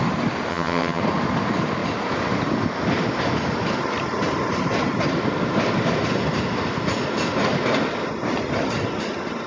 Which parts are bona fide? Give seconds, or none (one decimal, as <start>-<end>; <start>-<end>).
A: 0.0-0.5; 1.0-9.5